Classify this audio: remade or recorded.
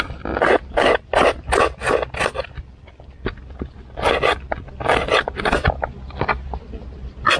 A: recorded